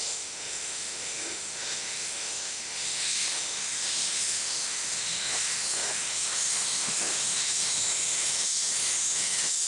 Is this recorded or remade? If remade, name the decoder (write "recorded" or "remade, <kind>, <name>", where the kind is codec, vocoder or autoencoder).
remade, autoencoder, DAC-VAE